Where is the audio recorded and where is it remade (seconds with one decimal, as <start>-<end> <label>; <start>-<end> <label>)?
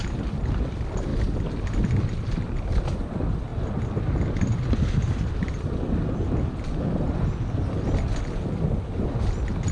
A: 0.0-9.7 recorded